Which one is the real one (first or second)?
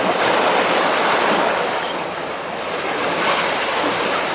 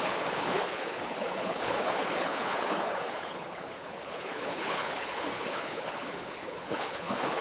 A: first